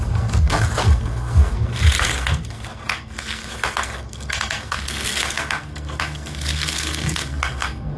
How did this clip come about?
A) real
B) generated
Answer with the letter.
B